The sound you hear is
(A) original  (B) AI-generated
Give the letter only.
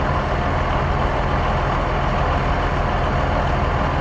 A